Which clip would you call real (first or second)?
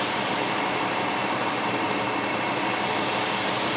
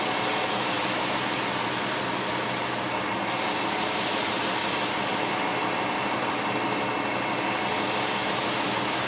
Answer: second